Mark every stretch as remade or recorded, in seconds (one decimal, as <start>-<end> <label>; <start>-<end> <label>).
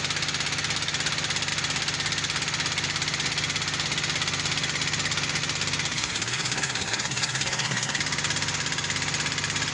0.0-5.9 recorded; 5.9-8.0 remade; 8.0-9.7 recorded